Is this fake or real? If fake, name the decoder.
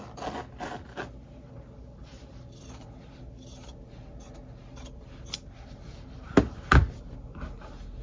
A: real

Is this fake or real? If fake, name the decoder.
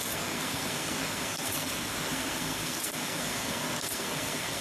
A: fake, codec, SNAC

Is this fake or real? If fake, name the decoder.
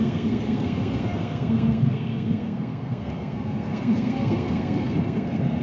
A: fake, codec, SNAC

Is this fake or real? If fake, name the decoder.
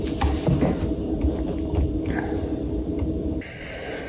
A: real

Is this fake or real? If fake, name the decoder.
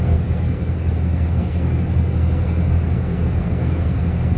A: fake, codec, SNAC